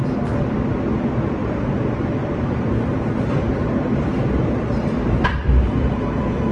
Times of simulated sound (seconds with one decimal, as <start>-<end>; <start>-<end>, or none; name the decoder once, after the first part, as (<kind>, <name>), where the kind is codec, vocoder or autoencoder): 1.4-2.7 (vocoder, BigVGAN v2); 3.5-4.5